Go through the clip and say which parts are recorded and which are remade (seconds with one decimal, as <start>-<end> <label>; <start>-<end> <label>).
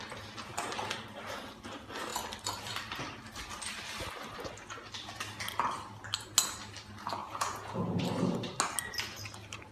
0.0-7.2 recorded; 7.2-8.0 remade; 8.0-9.7 recorded